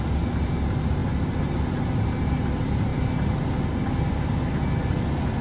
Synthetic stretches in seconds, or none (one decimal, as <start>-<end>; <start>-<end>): none